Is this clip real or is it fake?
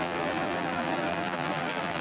fake